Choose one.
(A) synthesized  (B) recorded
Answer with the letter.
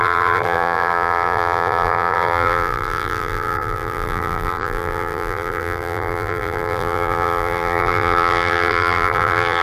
A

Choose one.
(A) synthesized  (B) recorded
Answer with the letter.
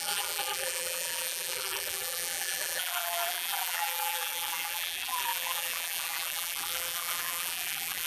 A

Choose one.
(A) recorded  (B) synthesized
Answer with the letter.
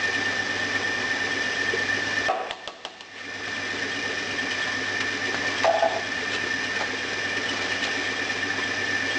A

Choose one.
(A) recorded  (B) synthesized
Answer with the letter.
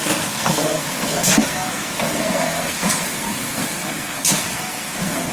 B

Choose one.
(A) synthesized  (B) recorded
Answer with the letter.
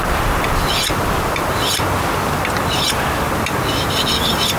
A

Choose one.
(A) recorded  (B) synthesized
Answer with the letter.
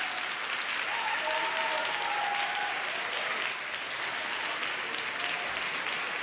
A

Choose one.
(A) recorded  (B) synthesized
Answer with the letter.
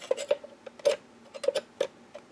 A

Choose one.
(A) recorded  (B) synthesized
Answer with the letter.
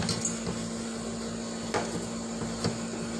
A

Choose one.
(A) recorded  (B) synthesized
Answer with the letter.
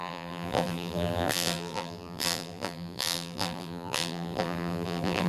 B